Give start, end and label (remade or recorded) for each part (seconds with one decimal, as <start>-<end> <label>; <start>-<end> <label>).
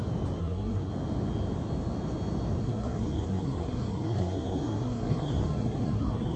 0.0-0.4 recorded; 0.4-0.9 remade; 0.9-2.6 recorded; 2.6-6.4 remade